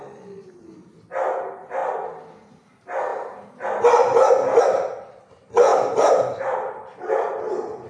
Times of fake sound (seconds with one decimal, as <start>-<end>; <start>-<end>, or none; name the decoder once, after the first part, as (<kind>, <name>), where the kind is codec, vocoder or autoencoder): 5.7-7.1 (vocoder, BigVGAN v2)